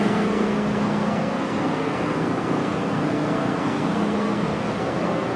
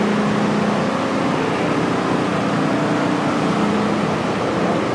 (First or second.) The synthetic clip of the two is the first